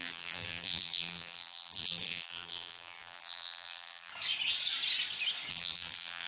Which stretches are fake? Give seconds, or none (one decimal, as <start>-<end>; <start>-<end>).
0.0-4.1; 5.5-6.3